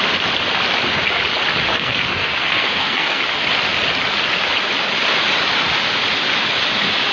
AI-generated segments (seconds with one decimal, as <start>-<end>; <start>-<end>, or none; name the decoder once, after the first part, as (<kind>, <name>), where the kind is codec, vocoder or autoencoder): 1.7-3.2 (codec, SNAC)